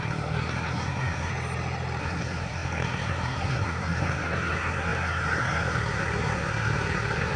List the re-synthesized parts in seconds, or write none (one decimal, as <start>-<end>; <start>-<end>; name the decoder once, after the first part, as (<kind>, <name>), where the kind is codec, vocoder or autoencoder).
0.0-1.3 (codec, SNAC); 2.0-7.4